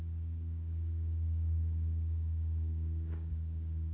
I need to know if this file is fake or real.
fake